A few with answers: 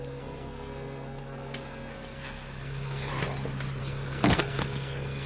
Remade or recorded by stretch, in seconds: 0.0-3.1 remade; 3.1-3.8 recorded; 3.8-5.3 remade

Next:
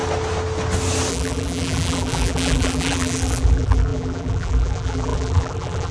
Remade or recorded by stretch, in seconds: 0.0-1.1 recorded; 1.1-5.9 remade

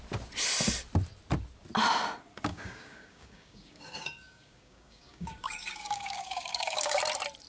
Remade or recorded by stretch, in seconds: 0.0-2.5 recorded; 2.5-7.0 remade; 7.0-7.5 recorded

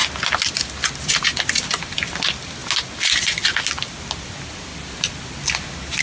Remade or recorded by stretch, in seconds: 0.0-6.0 recorded

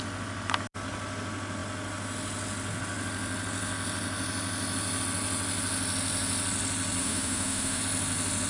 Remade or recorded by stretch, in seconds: 0.0-7.0 recorded; 7.0-7.8 remade; 7.8-8.5 recorded

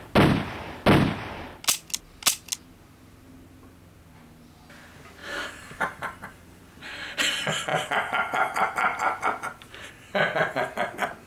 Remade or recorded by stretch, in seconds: 0.0-5.2 recorded; 5.2-6.6 remade; 6.6-11.3 recorded

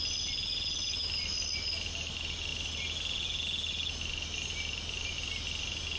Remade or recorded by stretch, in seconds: 0.0-6.0 recorded

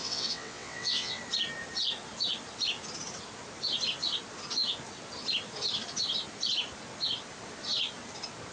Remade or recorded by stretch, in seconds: 0.0-1.2 remade; 1.2-8.5 recorded